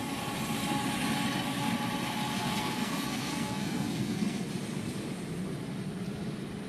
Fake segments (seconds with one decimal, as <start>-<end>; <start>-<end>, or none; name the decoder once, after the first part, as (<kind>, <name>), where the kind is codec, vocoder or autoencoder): 2.3-4.5 (codec, SNAC)